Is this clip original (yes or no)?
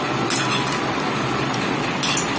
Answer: yes